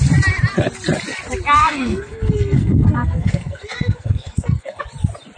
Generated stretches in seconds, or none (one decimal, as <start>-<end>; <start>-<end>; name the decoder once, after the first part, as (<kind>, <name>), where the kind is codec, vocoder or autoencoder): 1.6-4.8 (codec, SNAC)